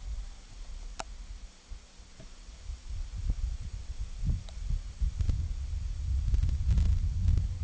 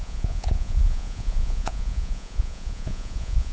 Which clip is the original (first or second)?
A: first